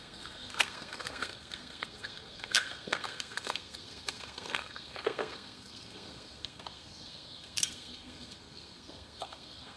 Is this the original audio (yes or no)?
no